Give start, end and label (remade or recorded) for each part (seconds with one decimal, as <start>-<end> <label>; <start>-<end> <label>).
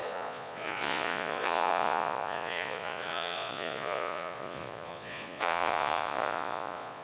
0.0-7.0 remade